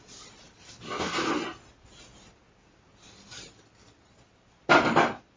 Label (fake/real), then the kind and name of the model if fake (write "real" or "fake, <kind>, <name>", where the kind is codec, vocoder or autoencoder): real